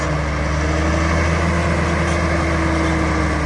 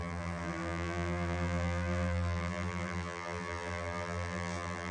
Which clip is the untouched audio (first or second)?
first